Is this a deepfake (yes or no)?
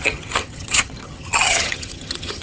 yes